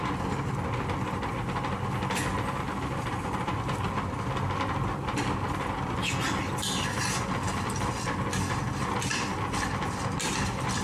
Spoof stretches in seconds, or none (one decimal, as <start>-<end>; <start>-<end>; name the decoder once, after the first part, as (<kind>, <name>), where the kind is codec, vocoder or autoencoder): 9.7-10.8 (vocoder, BigVGAN v2)